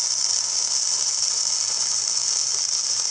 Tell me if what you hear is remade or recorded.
recorded